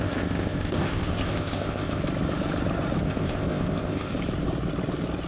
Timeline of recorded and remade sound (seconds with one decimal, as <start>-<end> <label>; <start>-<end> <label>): 0.0-2.0 remade; 2.0-3.0 recorded; 3.0-4.1 remade; 4.1-5.3 recorded